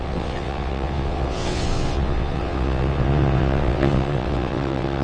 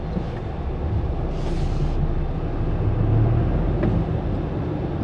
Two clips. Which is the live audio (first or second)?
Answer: second